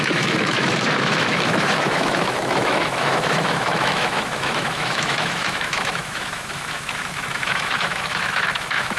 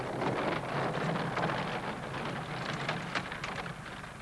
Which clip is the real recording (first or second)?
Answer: second